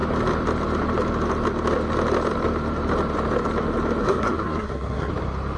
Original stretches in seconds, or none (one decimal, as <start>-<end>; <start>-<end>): 0.0-4.0; 5.1-5.6